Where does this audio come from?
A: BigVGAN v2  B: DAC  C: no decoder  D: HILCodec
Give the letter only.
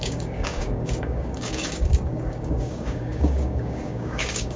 B